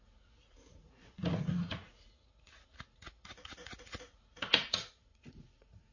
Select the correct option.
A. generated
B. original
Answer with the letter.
A